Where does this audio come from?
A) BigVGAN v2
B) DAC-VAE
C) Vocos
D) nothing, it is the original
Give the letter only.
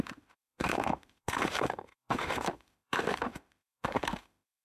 B